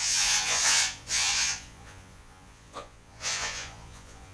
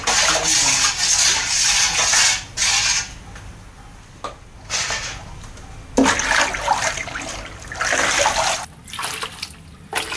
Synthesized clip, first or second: first